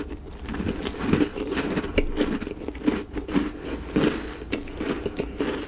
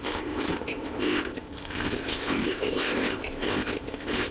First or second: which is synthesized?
second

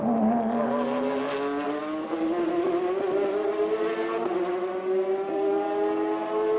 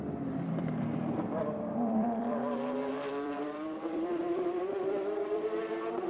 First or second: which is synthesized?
second